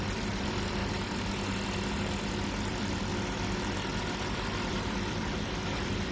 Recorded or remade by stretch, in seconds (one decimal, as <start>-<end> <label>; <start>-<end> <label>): 0.0-0.8 remade; 0.8-2.6 recorded; 2.6-3.1 remade; 3.1-4.7 recorded; 4.7-6.1 remade